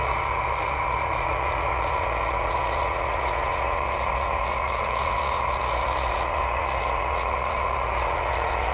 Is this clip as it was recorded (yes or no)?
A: no